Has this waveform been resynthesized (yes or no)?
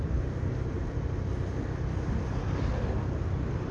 no